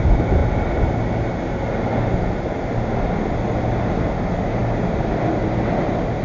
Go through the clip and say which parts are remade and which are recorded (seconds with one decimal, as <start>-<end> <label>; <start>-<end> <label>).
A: 0.0-6.2 recorded